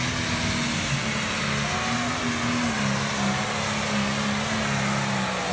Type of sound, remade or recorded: recorded